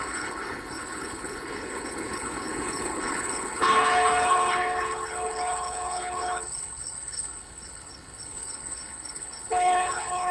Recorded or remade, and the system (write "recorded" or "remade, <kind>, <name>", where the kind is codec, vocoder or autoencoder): remade, codec, HILCodec